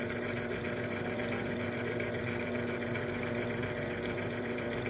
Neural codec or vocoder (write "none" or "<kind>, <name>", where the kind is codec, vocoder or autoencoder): vocoder, BigVGAN v2